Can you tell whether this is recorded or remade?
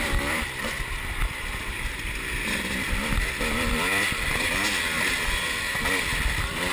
remade